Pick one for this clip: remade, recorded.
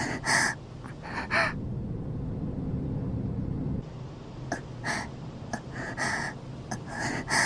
recorded